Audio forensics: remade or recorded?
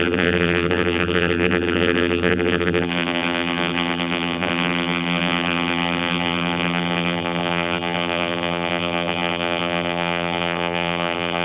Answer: remade